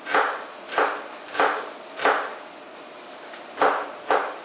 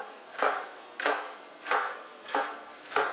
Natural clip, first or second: first